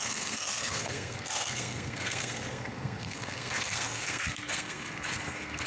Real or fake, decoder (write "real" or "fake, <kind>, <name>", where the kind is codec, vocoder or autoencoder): fake, codec, SNAC